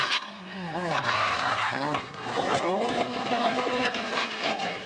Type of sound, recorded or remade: remade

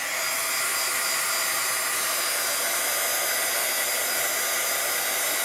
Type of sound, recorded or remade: recorded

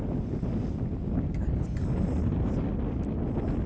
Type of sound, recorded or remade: recorded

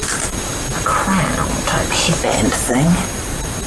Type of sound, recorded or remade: remade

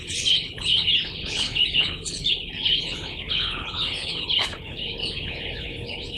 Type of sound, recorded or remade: remade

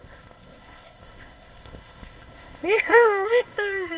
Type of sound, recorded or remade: remade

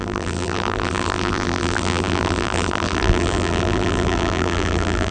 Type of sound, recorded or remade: remade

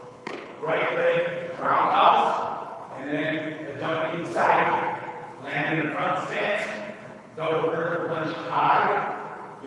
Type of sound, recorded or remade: remade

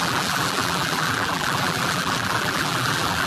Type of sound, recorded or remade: remade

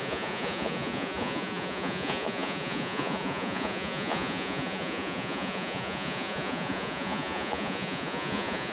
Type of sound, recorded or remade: remade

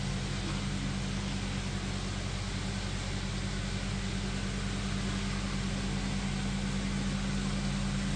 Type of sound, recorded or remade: recorded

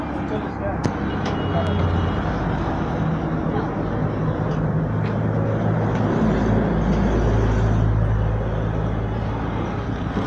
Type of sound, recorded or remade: recorded